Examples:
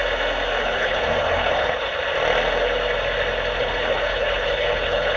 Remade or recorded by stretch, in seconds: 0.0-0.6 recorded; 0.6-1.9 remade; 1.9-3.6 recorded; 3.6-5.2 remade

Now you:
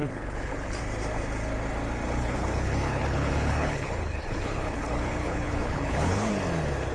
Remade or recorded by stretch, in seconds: 0.0-0.8 remade; 0.8-2.2 recorded; 2.2-6.3 remade; 6.3-6.9 recorded

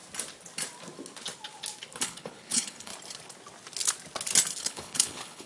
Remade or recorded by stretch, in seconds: 0.0-2.0 recorded; 2.0-2.9 remade; 2.9-4.6 recorded; 4.6-5.5 remade

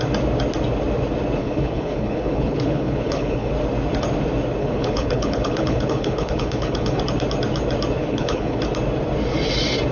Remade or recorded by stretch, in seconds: 0.0-1.4 recorded; 1.4-3.5 remade; 3.5-4.6 recorded; 4.6-7.0 remade; 7.0-8.0 recorded; 8.0-8.6 remade; 8.6-9.9 recorded

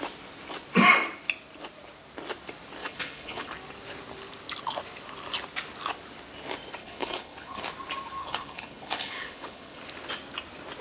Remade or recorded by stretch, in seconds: 0.0-2.8 recorded; 2.8-3.5 remade; 3.5-6.8 recorded; 6.8-7.6 remade; 7.6-8.2 recorded; 8.2-9.8 remade; 9.8-10.8 recorded